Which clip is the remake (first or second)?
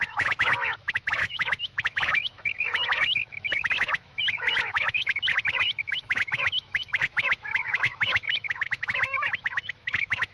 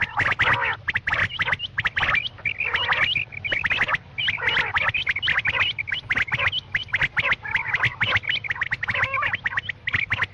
first